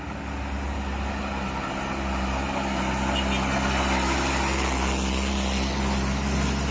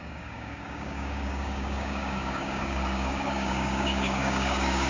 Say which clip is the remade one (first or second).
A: second